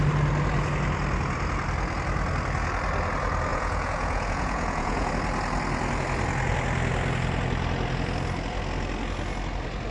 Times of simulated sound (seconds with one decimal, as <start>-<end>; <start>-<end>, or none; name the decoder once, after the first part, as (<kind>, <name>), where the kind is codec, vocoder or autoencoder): 3.5-5.1 (vocoder, Vocos)